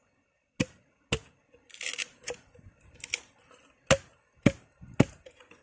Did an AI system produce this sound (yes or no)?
no